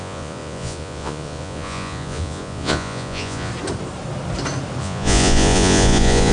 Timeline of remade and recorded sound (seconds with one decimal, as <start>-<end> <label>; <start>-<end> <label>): 0.0-3.5 remade; 3.5-4.8 recorded; 4.8-6.3 remade

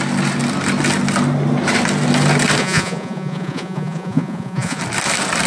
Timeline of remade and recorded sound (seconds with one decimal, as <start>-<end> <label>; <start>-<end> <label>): 0.0-2.6 recorded; 2.6-4.8 remade; 4.8-5.5 recorded

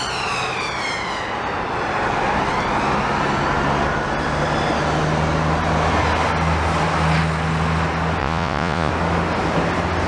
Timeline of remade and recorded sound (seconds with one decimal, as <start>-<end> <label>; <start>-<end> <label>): 0.0-8.2 recorded; 8.2-8.9 remade; 8.9-10.1 recorded